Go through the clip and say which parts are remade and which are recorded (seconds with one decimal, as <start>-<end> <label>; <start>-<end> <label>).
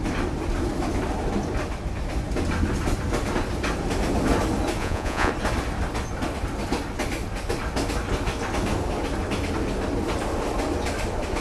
0.0-4.8 recorded; 4.8-5.3 remade; 5.3-11.4 recorded